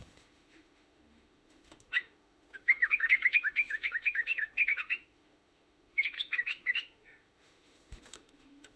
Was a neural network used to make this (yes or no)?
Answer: yes